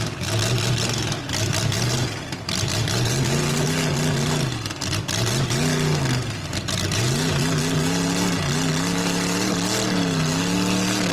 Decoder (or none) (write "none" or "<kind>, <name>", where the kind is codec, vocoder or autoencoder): none